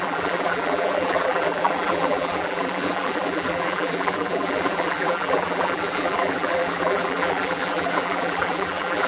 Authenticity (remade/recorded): remade